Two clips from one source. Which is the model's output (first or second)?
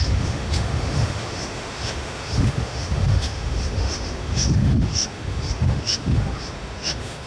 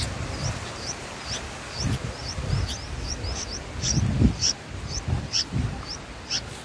first